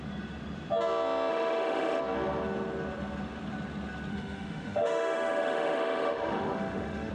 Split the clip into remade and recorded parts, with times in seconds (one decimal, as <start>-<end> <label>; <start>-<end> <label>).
0.0-1.3 recorded; 1.3-2.0 remade; 2.0-4.1 recorded; 4.1-7.1 remade